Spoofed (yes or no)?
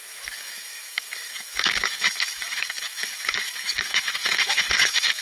yes